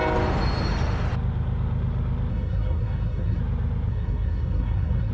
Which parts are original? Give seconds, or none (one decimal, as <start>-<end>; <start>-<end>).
0.0-2.3; 3.4-3.9